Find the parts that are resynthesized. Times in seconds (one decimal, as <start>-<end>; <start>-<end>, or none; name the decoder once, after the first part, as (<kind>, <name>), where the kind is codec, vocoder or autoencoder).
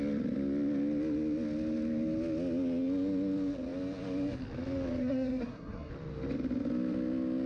5.0-5.9 (codec, SNAC)